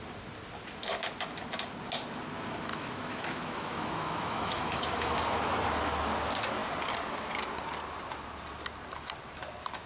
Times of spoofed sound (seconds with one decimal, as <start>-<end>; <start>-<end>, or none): 2.7-5.2